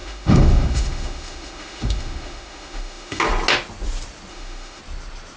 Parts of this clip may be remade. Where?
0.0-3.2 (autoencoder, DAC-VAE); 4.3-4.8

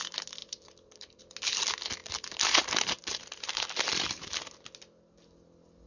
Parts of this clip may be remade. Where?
0.4-1.2 (vocoder, BigVGAN v2); 2.0-4.3